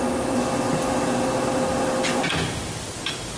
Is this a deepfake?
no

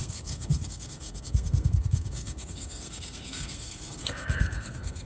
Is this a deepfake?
yes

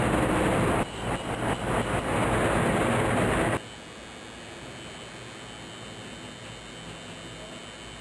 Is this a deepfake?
no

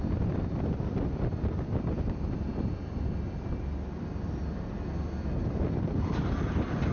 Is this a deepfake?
yes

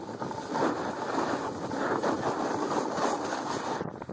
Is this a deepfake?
no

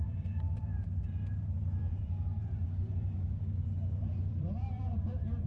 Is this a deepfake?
yes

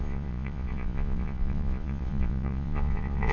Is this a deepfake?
yes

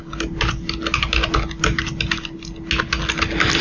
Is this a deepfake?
no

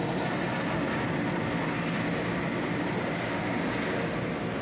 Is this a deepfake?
no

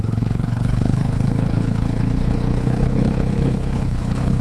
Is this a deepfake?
yes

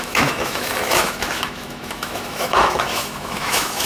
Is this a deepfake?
yes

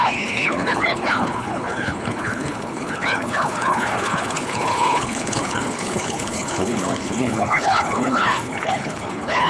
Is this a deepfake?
yes